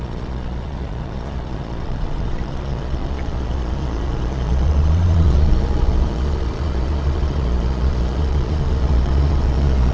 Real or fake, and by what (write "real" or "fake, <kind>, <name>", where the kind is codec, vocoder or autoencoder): fake, vocoder, Vocos